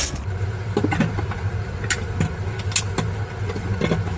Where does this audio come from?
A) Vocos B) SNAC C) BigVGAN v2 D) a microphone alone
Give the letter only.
D